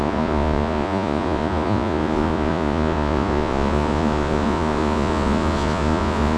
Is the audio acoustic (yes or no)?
no